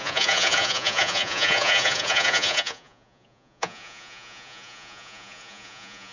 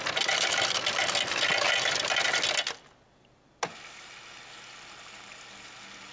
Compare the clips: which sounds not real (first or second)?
first